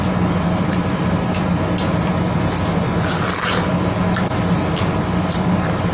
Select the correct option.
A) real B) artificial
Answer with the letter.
A